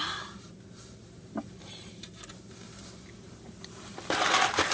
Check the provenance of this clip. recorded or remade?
recorded